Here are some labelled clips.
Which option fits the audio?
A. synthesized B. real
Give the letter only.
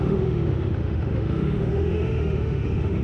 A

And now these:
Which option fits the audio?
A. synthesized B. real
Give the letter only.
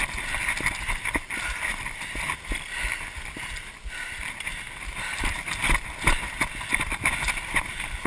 B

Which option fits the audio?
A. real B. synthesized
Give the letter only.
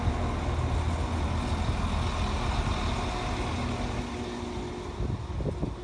A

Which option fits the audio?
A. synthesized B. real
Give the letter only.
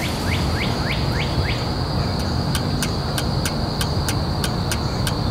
B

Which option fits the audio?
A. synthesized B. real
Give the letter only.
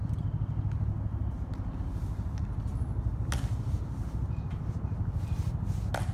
B